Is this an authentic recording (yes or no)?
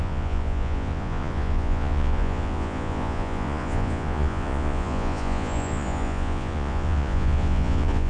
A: no